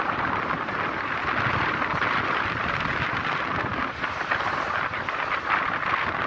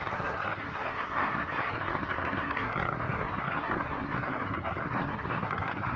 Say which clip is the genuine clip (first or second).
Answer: first